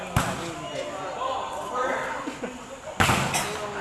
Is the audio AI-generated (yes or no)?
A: no